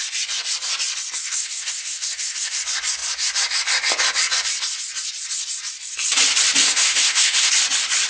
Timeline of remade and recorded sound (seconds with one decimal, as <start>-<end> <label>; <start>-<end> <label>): 0.0-1.2 recorded; 1.2-2.6 remade; 2.6-6.6 recorded; 6.6-7.5 remade; 7.5-8.1 recorded